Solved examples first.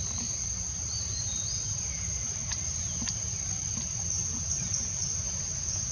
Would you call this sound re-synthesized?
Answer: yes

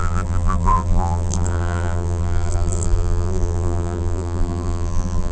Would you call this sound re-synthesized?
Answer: yes